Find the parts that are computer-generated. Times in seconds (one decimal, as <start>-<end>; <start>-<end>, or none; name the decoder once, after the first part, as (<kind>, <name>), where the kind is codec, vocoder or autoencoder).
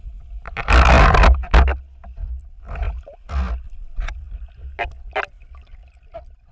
none